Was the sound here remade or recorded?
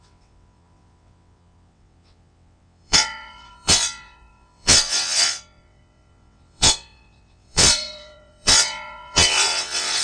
remade